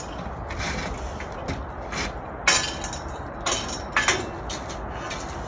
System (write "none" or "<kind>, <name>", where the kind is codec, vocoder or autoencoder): none